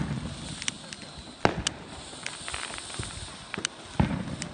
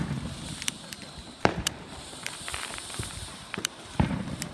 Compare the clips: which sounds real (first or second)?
first